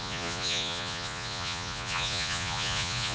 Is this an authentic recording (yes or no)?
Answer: no